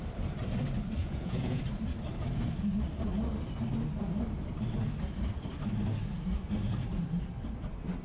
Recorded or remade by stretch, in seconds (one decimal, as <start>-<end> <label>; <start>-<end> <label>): 0.0-1.0 recorded; 1.0-1.6 remade; 1.6-8.0 recorded